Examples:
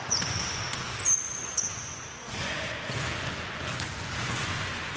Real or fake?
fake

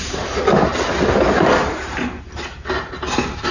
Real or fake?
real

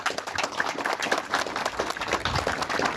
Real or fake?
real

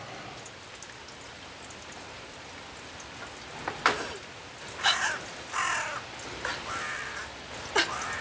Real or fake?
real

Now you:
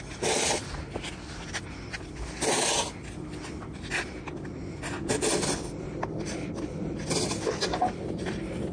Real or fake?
real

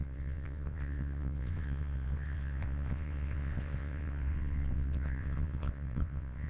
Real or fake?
fake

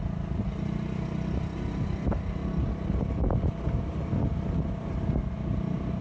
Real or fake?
real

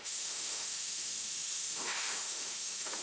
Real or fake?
fake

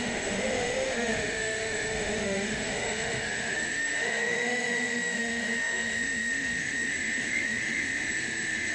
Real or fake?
fake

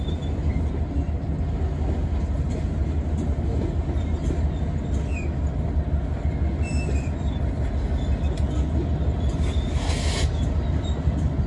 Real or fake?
real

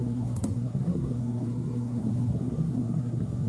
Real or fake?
fake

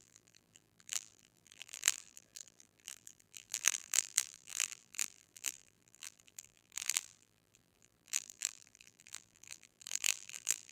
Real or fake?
fake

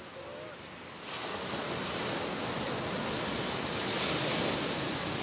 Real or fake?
real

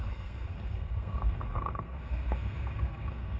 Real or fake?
fake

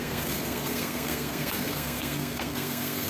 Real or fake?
fake